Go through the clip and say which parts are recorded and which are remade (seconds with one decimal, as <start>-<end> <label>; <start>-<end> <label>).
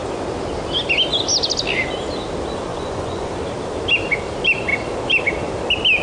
0.0-2.7 recorded; 2.7-3.3 remade; 3.3-6.0 recorded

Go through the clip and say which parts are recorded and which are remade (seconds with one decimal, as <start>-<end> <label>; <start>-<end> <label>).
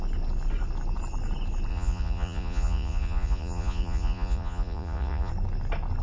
0.0-1.7 recorded; 1.7-5.3 remade; 5.3-6.0 recorded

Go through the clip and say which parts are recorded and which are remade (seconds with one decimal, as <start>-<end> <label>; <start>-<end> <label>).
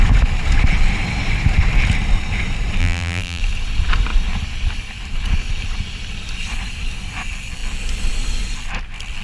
0.0-2.8 recorded; 2.8-3.4 remade; 3.4-9.2 recorded